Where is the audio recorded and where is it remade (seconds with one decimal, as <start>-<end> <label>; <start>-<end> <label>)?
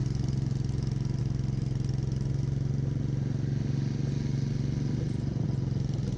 0.0-6.2 recorded